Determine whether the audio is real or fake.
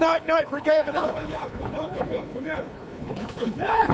fake